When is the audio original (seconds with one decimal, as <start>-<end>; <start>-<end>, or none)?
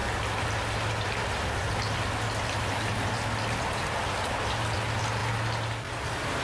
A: 0.0-6.4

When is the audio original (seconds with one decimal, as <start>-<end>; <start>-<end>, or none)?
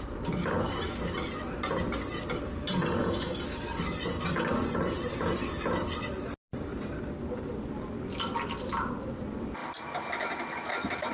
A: 0.0-11.1